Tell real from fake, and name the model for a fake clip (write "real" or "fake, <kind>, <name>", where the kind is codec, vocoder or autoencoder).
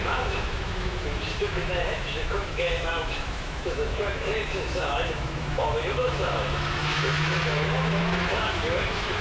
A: fake, autoencoder, DAC-VAE